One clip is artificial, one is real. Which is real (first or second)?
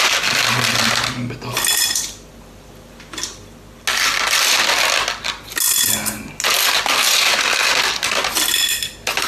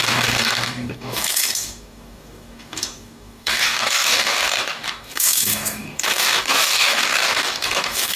first